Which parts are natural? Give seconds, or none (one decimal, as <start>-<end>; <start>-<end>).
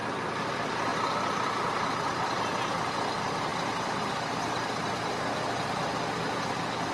0.0-6.9